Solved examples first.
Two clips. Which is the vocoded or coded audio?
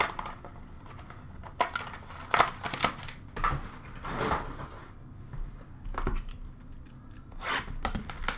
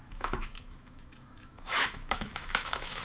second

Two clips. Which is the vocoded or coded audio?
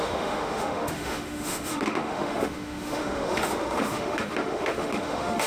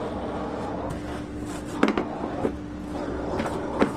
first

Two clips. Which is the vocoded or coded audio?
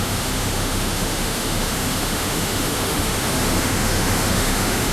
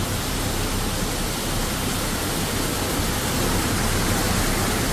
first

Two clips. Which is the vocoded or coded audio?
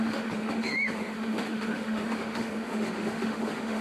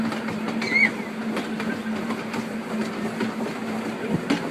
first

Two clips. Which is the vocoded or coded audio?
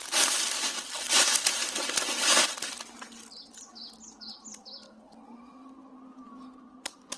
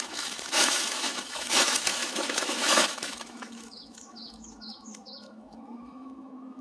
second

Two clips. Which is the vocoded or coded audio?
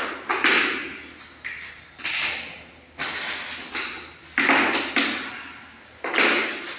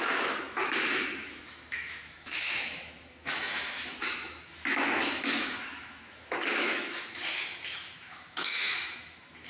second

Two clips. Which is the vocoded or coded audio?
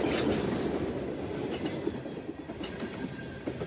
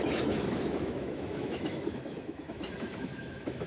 second